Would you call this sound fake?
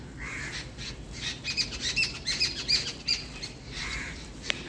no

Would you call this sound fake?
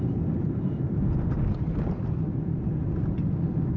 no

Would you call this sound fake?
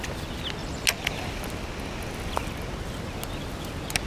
no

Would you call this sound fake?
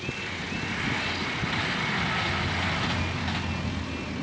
no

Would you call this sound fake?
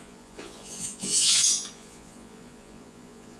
yes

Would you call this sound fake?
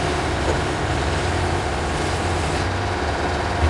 no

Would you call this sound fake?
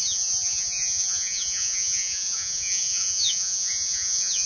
yes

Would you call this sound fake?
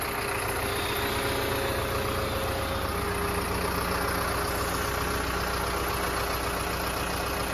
no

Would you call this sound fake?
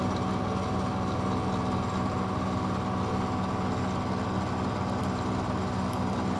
no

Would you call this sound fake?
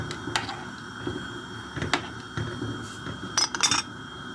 no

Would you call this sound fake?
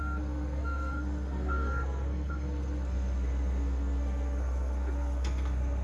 yes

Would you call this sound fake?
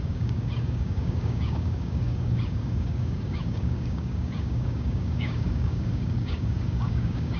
yes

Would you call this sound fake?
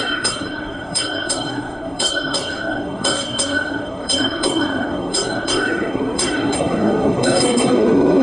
yes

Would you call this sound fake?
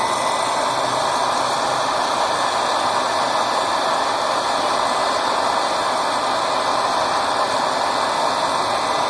no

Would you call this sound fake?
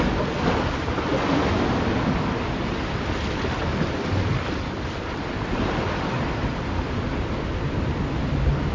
no